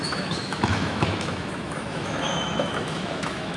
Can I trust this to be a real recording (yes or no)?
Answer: no